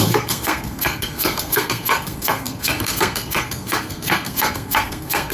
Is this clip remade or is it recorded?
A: remade